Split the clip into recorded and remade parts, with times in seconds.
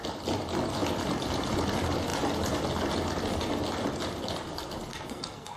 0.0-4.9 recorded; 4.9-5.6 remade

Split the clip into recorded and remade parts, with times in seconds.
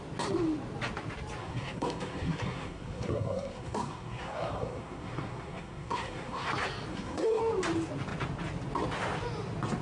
0.0-1.4 recorded; 1.4-6.5 remade; 6.5-6.9 recorded; 6.9-7.4 remade; 7.4-9.8 recorded